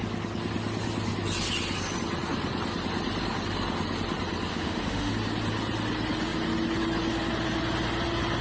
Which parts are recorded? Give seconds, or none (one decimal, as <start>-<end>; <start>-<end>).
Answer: 0.0-4.5; 5.1-8.4